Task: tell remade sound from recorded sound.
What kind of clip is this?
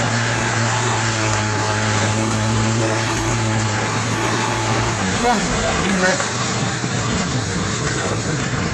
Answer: remade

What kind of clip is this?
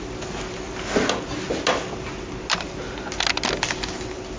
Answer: recorded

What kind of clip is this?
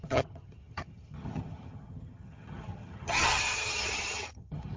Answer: remade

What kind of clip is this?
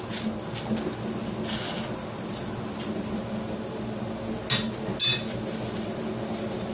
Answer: recorded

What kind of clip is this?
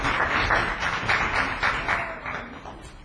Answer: recorded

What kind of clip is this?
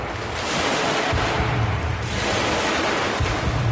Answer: recorded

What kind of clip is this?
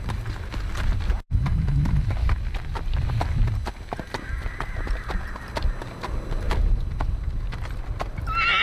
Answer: recorded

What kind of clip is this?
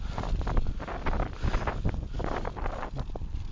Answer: recorded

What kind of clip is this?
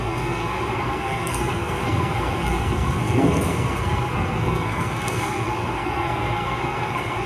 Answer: remade